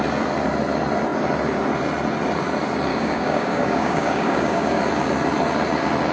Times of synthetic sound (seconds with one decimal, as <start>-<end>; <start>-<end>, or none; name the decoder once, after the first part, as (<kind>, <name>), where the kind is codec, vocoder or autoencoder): 2.9-4.8 (codec, DAC)